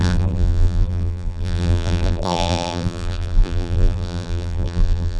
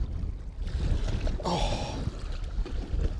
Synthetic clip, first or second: first